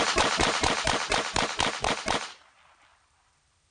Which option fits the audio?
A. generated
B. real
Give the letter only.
B